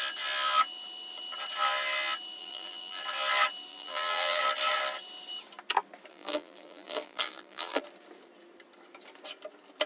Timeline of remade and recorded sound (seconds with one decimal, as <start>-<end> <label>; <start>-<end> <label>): 0.0-2.4 recorded; 2.4-3.0 remade; 3.0-3.7 recorded; 3.7-4.4 remade; 4.4-6.1 recorded; 6.1-7.8 remade; 7.8-9.9 recorded